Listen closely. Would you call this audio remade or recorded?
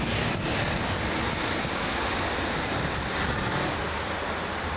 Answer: recorded